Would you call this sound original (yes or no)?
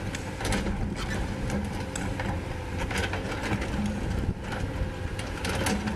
yes